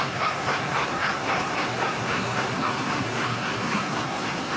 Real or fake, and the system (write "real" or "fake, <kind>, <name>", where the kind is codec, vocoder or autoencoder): fake, codec, SNAC